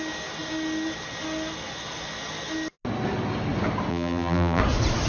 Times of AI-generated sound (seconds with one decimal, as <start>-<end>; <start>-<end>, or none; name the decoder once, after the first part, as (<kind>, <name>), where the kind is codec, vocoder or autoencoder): 3.9-4.6 (vocoder, BigVGAN v2)